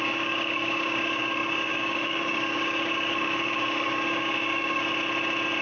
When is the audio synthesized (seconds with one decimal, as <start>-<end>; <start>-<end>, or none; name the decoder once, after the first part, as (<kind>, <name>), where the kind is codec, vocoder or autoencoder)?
0.0-4.8 (codec, DAC)